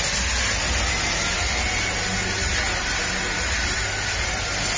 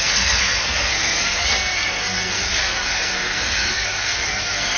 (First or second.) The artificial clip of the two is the second